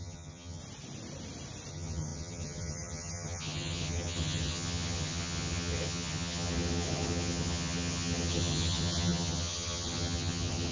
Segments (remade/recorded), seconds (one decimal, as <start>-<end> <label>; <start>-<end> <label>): 0.0-0.6 remade; 0.6-1.7 recorded; 1.7-10.7 remade